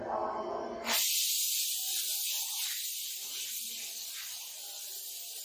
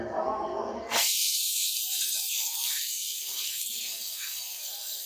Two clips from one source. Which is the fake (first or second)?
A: second